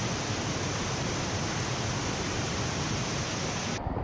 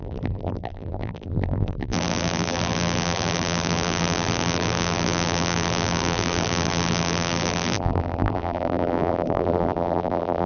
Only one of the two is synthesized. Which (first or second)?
second